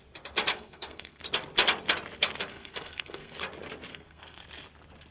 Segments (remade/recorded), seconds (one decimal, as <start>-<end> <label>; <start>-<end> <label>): 0.0-0.5 recorded; 0.5-1.2 remade; 1.2-2.5 recorded; 2.5-3.4 remade; 3.4-3.9 recorded; 3.9-4.4 remade; 4.4-5.1 recorded